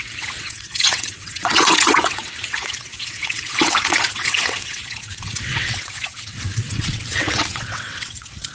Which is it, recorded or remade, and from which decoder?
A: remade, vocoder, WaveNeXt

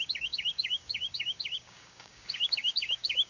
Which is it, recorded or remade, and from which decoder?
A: remade, codec, DAC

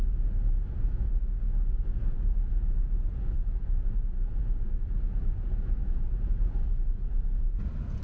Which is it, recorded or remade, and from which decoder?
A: remade, vocoder, Vocos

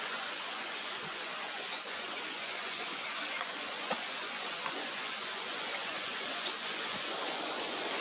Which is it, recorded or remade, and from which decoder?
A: remade, vocoder, Vocos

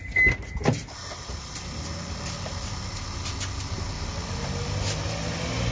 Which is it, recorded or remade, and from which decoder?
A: recorded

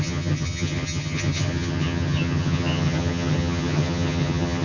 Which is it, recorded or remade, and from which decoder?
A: remade, vocoder, HiFi-GAN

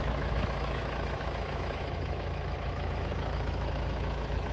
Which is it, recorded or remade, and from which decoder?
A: remade, autoencoder, DAC-VAE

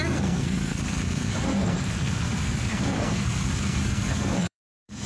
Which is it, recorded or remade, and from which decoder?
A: remade, codec, SNAC